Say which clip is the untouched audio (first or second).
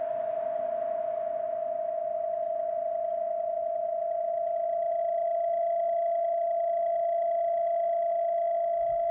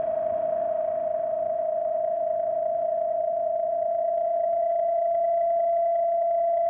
first